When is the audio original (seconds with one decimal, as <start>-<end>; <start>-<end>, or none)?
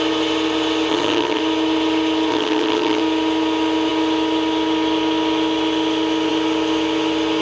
0.0-0.9; 1.4-2.3; 3.0-7.4